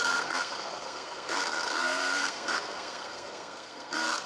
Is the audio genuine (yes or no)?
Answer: no